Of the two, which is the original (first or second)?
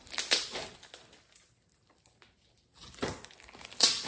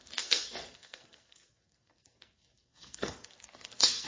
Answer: first